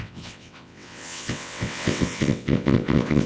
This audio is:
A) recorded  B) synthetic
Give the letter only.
B